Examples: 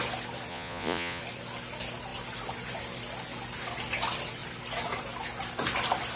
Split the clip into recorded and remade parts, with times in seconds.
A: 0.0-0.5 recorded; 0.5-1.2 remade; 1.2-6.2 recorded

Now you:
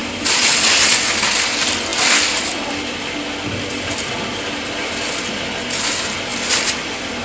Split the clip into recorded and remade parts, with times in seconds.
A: 0.0-0.9 remade; 0.9-6.3 recorded; 6.3-7.2 remade

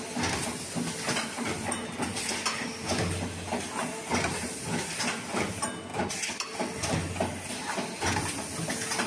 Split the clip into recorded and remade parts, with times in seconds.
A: 0.0-9.1 recorded

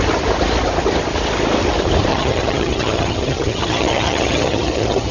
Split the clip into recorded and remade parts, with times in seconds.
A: 0.0-2.1 recorded; 2.1-5.1 remade

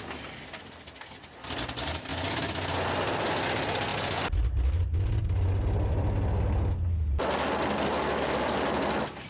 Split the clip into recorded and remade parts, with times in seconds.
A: 0.0-9.3 recorded